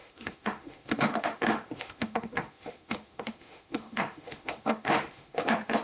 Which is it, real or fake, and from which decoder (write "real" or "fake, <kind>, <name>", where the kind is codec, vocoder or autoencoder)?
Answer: fake, autoencoder, DAC-VAE